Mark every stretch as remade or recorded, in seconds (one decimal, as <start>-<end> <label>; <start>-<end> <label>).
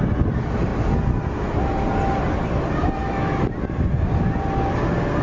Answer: 0.0-5.2 recorded